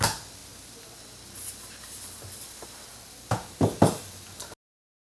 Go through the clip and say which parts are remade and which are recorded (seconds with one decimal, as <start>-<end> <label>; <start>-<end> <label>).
0.0-5.1 recorded

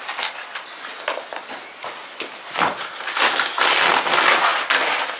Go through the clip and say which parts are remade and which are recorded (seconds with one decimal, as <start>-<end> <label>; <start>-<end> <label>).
0.0-3.5 remade; 3.5-4.0 recorded; 4.0-5.2 remade

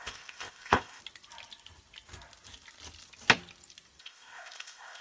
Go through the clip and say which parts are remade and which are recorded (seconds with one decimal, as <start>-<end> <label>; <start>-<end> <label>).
0.0-1.0 remade; 1.0-4.0 recorded; 4.0-5.0 remade